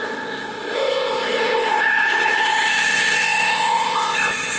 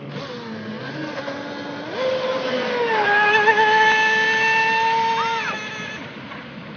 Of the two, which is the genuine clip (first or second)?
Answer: second